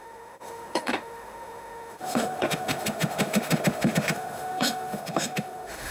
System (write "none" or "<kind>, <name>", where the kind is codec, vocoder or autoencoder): autoencoder, DAC-VAE